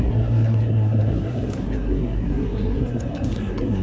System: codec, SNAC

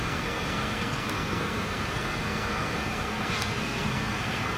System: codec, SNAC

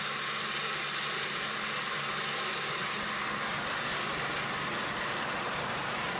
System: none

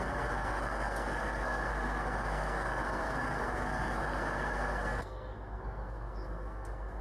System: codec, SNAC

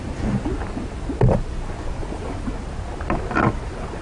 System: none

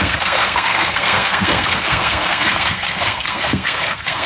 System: codec, SNAC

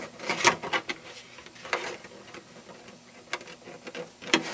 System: none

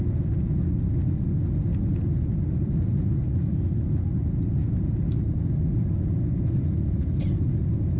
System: none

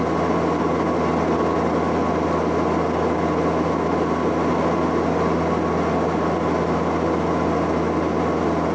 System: none